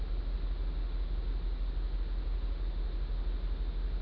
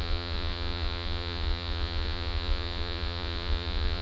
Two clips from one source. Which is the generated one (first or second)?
second